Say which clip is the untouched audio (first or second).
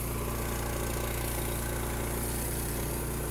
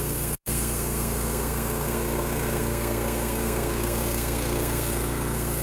first